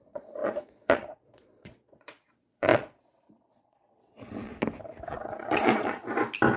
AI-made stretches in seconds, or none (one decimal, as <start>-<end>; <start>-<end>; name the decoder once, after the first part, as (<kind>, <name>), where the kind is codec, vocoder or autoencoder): 0.0-4.5 (vocoder, Vocos); 5.1-6.0